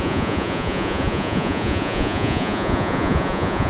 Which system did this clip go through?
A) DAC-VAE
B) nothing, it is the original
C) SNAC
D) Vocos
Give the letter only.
D